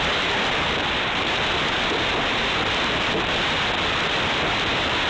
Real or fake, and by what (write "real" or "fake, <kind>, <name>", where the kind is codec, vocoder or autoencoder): fake, vocoder, BigVGAN v2